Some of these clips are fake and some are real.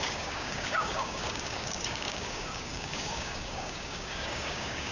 fake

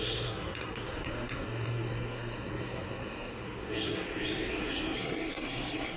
fake